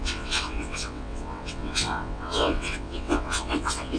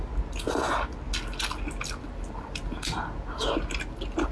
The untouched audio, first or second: second